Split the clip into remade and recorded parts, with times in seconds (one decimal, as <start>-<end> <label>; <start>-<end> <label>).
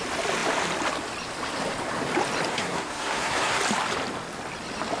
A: 0.0-2.5 recorded; 2.5-3.6 remade; 3.6-5.0 recorded